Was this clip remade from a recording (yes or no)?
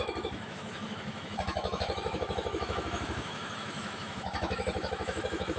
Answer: yes